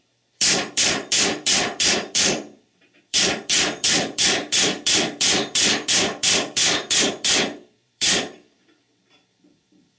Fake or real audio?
fake